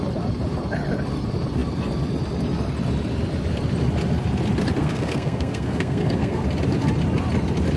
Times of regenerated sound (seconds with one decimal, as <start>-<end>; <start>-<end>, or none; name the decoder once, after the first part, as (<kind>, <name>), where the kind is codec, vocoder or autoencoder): 4.8-6.4 (codec, SNAC)